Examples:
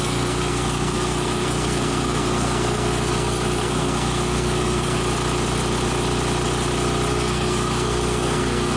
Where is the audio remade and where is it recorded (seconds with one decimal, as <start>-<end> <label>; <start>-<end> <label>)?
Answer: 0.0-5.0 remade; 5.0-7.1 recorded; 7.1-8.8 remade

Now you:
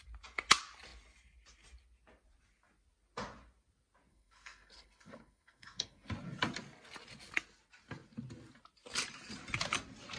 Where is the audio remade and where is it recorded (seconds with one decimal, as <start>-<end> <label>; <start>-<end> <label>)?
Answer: 0.0-4.1 recorded; 4.1-6.1 remade; 6.1-10.2 recorded

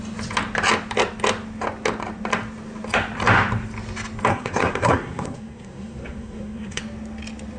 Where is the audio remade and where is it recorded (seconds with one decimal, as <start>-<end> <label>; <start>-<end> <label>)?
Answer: 0.0-4.3 recorded; 4.3-6.8 remade; 6.8-7.6 recorded

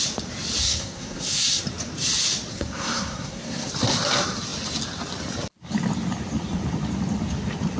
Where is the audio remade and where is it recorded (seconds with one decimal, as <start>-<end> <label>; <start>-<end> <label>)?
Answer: 0.0-0.6 recorded; 0.6-1.6 remade; 1.6-2.5 recorded; 2.5-3.7 remade; 3.7-7.8 recorded

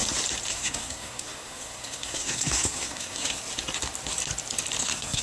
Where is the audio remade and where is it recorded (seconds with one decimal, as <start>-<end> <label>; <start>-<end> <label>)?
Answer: 0.0-0.5 recorded; 0.5-3.4 remade; 3.4-4.8 recorded; 4.8-5.2 remade

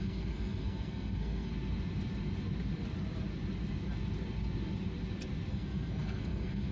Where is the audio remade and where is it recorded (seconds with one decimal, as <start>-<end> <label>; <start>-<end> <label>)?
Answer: 0.0-1.5 remade; 1.5-5.5 recorded; 5.5-6.7 remade

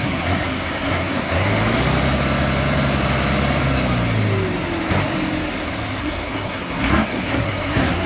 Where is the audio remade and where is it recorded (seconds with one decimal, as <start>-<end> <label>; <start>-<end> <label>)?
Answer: 0.0-1.5 remade; 1.5-6.0 recorded; 6.0-8.1 remade